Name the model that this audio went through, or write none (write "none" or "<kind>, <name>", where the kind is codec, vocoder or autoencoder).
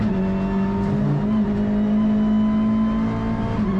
none